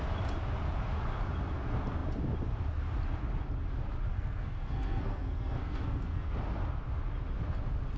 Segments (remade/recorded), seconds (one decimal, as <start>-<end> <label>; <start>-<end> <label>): 0.0-4.1 recorded; 4.1-6.3 remade; 6.3-8.0 recorded